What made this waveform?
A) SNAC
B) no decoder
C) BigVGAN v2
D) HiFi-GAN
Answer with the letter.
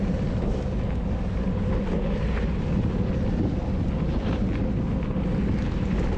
B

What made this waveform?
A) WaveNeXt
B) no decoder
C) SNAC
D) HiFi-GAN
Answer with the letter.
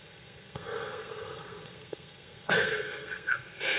C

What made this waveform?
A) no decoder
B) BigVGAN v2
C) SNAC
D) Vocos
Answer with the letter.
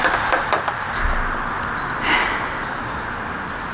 A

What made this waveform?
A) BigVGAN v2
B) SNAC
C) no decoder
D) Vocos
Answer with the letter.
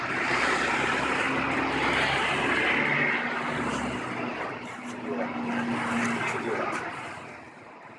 C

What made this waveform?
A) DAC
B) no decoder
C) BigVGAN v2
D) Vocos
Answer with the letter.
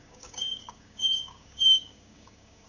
A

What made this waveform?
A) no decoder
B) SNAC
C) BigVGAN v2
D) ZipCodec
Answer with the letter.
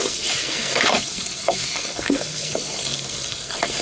B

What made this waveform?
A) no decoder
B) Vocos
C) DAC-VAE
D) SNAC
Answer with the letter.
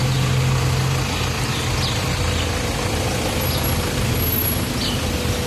A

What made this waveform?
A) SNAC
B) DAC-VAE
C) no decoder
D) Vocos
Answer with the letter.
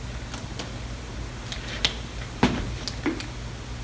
C